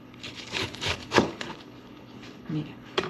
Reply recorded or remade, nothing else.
remade